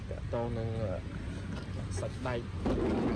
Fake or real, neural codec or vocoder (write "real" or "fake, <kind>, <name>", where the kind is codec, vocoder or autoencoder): real